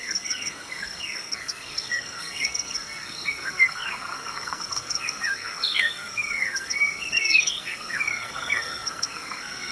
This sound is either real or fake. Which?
fake